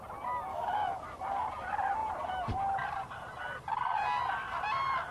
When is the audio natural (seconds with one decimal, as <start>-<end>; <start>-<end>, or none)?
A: 0.0-0.5; 1.2-5.1